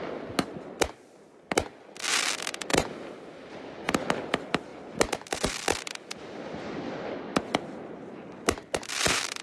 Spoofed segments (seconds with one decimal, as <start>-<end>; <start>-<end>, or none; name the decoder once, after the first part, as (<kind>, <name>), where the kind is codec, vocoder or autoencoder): none